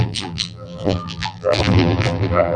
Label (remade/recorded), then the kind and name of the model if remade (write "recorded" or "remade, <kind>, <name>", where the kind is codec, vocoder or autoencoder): remade, vocoder, BigVGAN v2